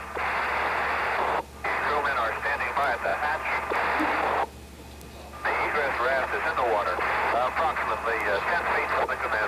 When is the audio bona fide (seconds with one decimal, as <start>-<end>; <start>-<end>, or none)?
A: 0.0-0.7; 1.4-9.5

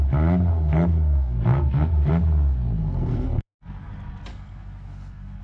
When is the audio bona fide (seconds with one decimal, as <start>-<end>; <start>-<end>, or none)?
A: 0.0-0.5; 2.1-2.8; 3.9-4.3

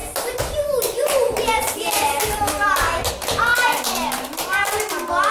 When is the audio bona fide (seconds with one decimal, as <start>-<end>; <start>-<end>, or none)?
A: 3.1-5.3

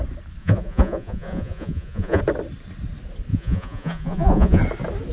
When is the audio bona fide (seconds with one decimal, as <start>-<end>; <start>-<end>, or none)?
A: 0.0-0.4; 2.2-3.3; 4.6-5.1

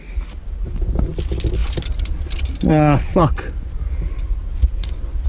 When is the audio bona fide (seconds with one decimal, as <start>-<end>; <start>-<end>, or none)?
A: 0.0-1.6; 2.7-3.1; 4.1-5.3